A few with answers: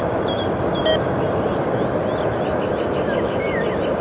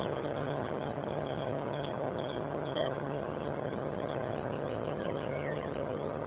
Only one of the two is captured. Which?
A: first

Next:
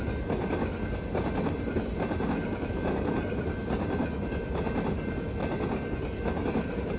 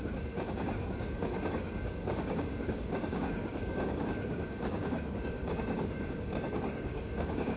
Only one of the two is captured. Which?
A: first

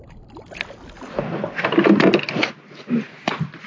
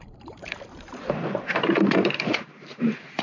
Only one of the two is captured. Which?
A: first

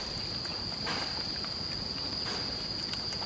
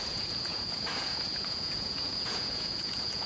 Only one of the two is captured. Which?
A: first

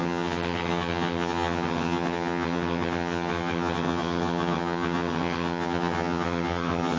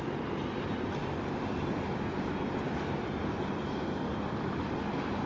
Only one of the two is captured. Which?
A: second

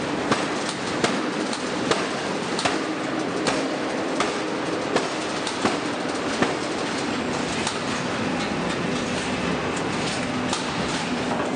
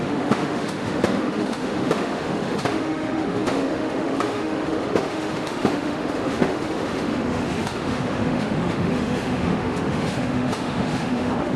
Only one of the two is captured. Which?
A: first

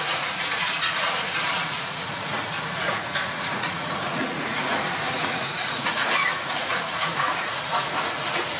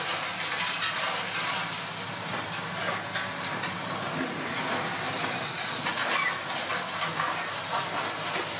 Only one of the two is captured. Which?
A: second